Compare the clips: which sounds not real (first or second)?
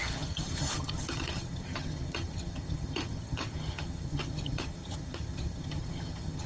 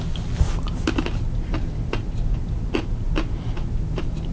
first